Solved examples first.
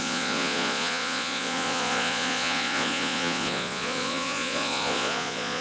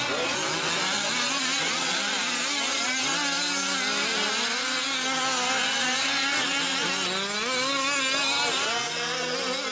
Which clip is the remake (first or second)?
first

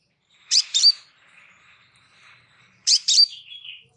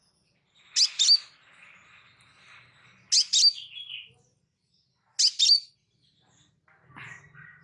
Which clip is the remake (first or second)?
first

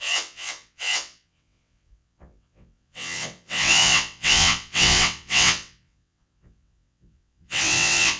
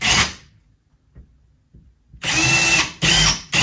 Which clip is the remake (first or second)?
first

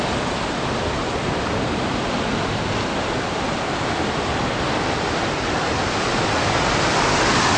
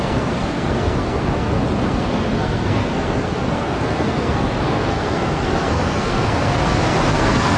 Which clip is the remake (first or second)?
second